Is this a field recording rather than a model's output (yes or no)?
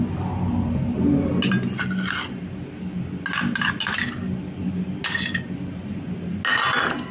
yes